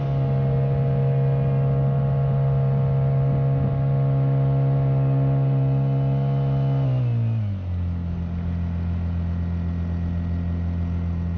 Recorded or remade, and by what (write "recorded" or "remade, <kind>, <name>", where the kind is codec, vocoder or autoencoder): recorded